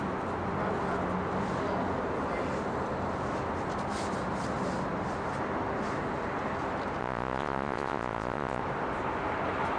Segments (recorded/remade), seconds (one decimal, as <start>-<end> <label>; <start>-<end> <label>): 0.0-7.0 recorded; 7.0-8.6 remade; 8.6-9.8 recorded